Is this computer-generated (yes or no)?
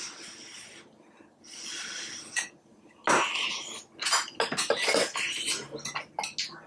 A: no